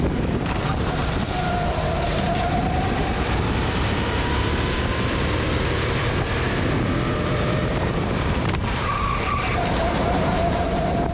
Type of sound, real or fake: fake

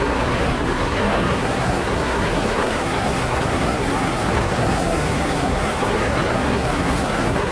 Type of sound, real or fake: fake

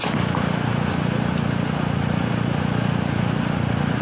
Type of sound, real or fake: real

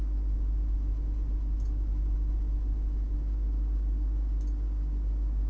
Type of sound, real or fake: real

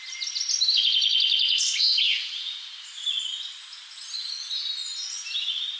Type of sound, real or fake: real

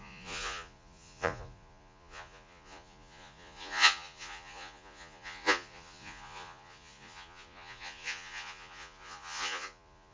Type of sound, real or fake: fake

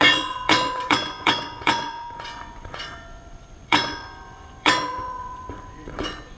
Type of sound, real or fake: fake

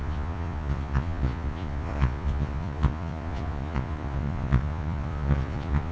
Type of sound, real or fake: fake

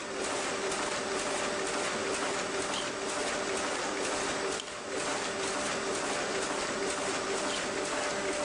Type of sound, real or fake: real